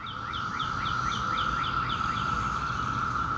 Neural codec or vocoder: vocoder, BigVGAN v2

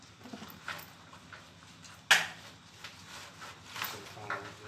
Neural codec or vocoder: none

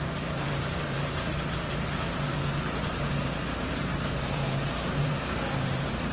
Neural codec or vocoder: vocoder, BigVGAN v2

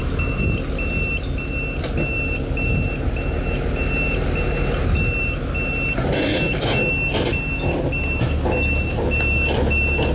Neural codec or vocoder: none